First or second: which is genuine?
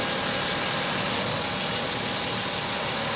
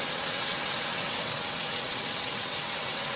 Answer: first